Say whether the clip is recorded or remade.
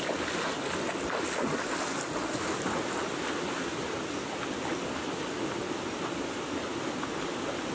recorded